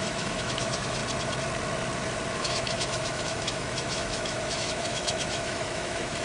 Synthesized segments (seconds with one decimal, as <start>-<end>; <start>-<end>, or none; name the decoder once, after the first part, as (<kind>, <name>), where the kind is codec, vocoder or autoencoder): 0.0-1.0 (autoencoder, DAC-VAE); 2.3-6.2